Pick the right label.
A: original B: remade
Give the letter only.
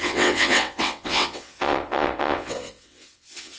B